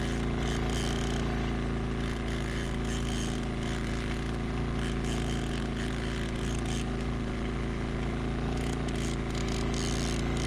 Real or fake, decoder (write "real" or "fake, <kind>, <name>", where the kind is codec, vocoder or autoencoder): real